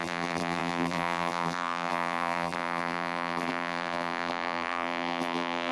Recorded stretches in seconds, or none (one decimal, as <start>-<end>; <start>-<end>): none